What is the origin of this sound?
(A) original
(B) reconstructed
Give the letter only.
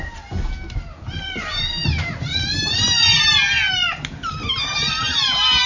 A